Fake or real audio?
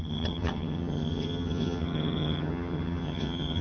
fake